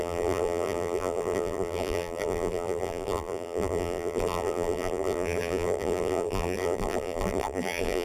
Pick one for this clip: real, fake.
fake